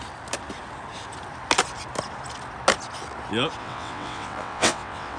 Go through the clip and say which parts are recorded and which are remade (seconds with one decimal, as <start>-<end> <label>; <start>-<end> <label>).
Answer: 0.0-3.6 recorded; 3.6-5.2 remade